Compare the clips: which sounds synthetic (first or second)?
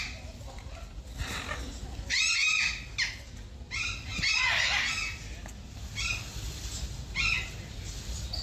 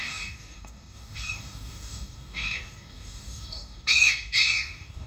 second